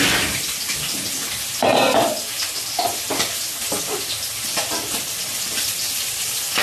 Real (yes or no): no